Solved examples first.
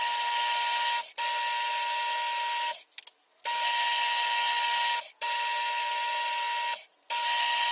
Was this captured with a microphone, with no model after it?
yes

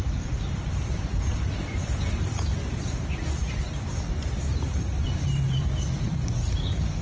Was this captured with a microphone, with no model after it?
no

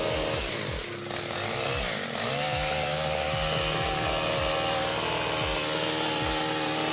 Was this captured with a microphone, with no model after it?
yes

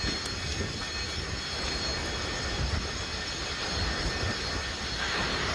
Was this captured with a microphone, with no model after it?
yes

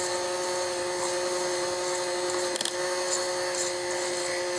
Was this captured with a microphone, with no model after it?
yes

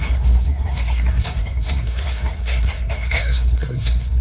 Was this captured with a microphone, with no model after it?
no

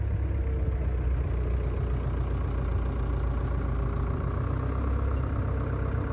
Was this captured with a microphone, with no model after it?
yes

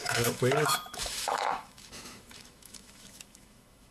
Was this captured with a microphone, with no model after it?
no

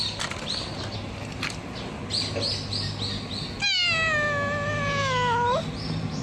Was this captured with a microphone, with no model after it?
yes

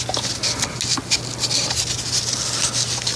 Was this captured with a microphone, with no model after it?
yes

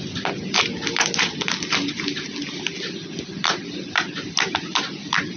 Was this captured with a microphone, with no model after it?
yes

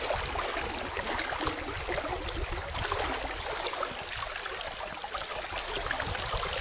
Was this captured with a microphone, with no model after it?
yes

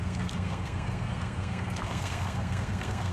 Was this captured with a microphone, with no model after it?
no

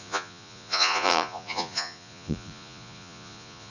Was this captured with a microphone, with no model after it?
no